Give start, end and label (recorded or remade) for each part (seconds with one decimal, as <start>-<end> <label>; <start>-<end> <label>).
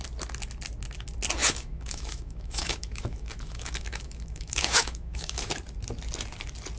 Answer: 0.0-1.4 recorded; 1.4-5.5 remade; 5.5-6.8 recorded